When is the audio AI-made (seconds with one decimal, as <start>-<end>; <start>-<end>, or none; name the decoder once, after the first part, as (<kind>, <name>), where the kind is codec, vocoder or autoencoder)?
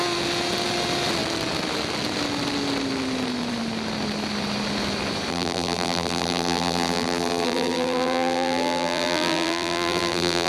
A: 5.3-10.5 (vocoder, BigVGAN v2)